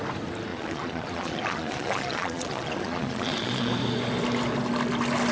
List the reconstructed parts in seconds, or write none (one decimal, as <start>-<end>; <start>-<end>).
0.5-3.7